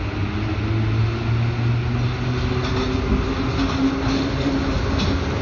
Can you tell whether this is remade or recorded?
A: recorded